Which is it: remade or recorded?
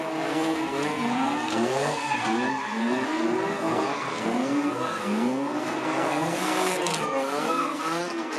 remade